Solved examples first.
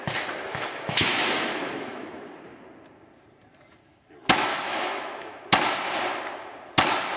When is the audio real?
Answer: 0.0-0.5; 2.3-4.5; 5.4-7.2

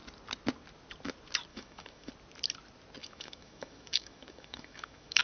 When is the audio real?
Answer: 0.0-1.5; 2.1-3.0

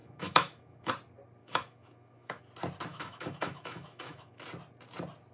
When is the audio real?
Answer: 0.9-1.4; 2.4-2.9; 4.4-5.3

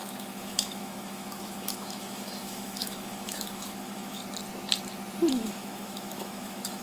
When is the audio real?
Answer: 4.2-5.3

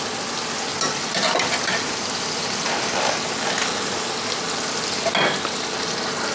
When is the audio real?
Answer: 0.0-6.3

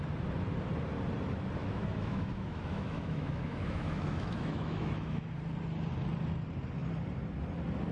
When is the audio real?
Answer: 0.0-1.6; 5.3-7.9

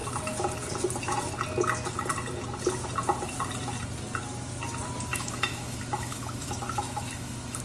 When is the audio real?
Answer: 0.0-5.1

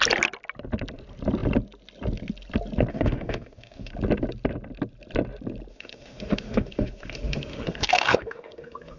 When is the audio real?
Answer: 0.0-2.9; 3.9-5.7